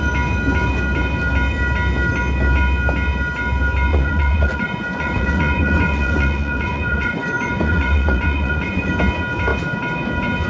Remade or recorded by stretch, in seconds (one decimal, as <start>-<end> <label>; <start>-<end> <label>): 0.0-3.9 recorded; 3.9-8.9 remade; 8.9-10.5 recorded